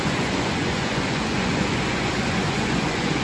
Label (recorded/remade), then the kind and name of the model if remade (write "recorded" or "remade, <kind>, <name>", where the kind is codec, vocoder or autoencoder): remade, vocoder, Vocos